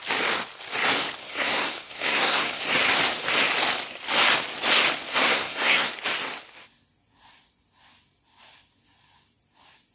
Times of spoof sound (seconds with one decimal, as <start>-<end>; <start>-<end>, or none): 1.2-2.6; 5.1-5.9